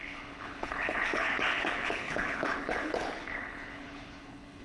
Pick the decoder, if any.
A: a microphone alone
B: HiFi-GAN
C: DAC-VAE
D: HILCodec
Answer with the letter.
D